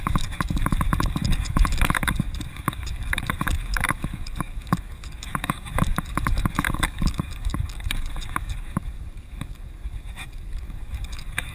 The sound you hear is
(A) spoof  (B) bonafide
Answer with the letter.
A